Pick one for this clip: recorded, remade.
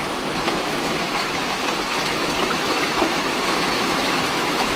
remade